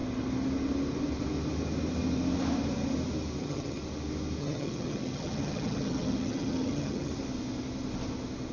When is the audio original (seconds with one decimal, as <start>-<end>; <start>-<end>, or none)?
0.0-3.4; 3.8-4.4; 7.1-8.5

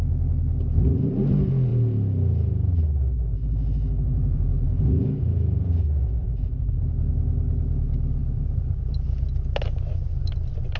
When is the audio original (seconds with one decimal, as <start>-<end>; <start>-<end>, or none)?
0.0-4.1; 7.1-10.8

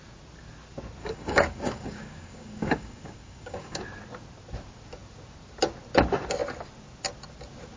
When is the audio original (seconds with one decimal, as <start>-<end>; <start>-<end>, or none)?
0.0-1.0; 3.8-7.8

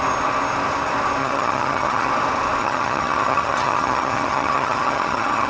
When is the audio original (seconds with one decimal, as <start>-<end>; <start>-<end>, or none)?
0.0-1.2; 2.1-2.6

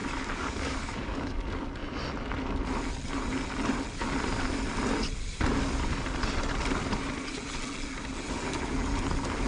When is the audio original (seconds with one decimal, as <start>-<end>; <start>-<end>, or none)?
1.4-9.5

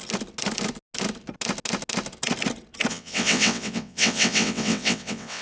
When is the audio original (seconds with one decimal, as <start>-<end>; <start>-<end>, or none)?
0.0-2.9

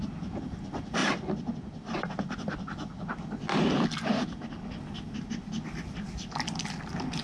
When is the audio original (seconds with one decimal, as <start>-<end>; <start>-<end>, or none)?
0.0-7.2

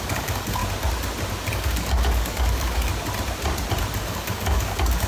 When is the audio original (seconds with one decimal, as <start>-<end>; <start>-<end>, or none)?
0.6-1.5; 2.9-4.0